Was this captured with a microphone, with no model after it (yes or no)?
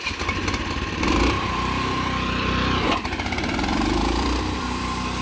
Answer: no